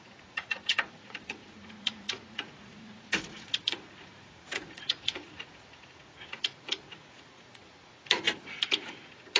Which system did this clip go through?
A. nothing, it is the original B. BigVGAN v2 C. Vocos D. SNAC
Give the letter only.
C